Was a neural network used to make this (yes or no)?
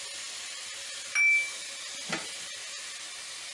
no